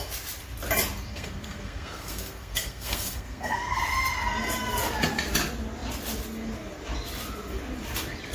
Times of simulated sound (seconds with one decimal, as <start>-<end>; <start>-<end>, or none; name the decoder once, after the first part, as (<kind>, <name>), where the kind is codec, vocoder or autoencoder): 1.1-3.8 (codec, SNAC)